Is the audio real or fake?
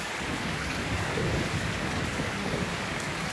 fake